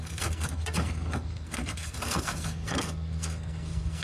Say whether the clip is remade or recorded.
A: remade